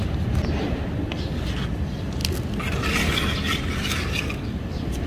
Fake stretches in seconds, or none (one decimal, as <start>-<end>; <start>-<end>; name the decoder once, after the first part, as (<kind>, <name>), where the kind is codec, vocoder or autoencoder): none